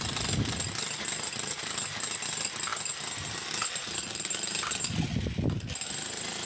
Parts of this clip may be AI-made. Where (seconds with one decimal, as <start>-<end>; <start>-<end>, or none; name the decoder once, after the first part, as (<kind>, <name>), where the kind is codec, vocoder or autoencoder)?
none